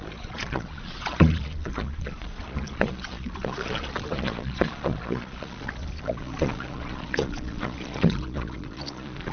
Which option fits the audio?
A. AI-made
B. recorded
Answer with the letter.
A